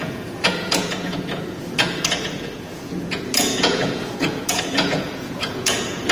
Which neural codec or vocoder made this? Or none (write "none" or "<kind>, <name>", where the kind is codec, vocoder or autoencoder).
vocoder, Vocos